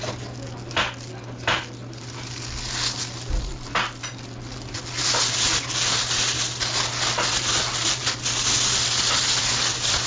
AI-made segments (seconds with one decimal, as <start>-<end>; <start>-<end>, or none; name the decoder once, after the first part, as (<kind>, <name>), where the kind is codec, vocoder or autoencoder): none